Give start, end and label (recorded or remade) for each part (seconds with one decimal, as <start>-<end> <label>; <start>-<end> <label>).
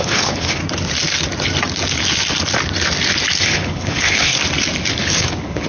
0.0-0.6 remade; 0.6-3.4 recorded; 3.4-4.4 remade; 4.4-4.9 recorded; 4.9-5.7 remade